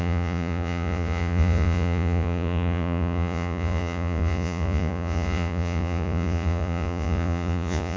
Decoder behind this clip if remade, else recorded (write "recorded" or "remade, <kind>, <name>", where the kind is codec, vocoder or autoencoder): remade, vocoder, Vocos